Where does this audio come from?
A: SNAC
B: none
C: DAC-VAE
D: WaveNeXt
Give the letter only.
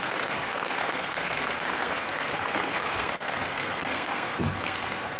A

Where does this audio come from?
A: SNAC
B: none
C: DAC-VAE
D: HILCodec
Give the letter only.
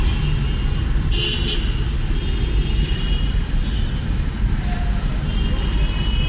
B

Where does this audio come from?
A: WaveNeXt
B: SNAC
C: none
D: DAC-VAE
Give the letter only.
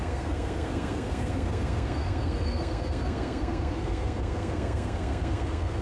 B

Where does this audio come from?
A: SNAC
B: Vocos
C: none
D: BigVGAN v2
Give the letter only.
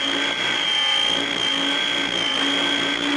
C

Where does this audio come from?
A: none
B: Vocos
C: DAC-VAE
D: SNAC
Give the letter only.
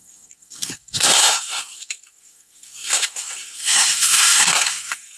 D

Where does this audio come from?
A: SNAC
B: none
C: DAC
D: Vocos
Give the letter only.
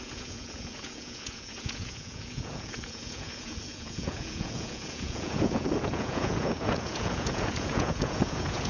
D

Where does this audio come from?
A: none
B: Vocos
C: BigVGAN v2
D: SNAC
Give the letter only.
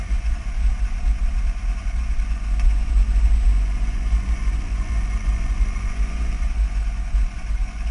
B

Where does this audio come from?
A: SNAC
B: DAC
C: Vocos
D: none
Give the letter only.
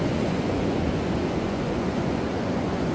C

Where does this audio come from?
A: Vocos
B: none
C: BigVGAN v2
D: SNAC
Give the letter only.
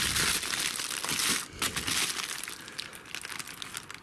B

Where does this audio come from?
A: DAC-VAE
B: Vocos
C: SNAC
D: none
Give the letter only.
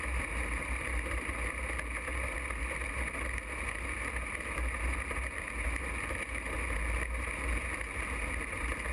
D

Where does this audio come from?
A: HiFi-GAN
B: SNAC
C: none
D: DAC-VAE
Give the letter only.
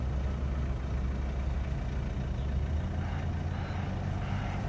C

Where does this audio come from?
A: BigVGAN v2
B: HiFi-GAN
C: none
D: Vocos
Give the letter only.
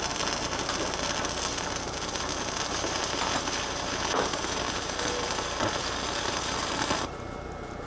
C